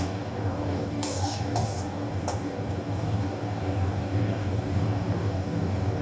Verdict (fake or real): fake